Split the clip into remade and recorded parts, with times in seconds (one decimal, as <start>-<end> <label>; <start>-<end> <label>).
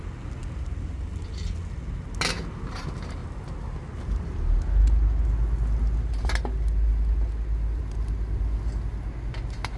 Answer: 0.0-9.8 recorded